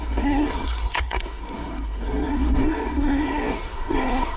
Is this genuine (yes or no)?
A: no